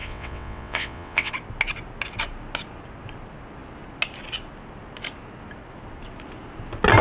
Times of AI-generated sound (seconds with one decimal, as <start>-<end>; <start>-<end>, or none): 0.0-1.3